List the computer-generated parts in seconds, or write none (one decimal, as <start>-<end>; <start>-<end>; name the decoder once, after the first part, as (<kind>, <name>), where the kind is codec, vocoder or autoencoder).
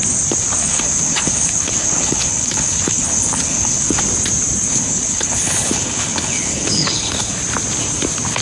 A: 0.6-4.0 (codec, HILCodec); 4.7-7.4